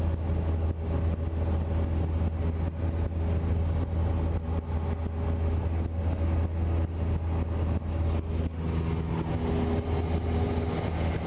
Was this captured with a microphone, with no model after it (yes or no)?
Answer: yes